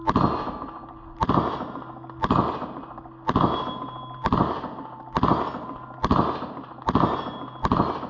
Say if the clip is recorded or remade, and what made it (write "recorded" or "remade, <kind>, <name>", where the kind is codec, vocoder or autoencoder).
recorded